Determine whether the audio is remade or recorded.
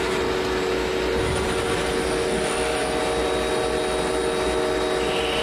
recorded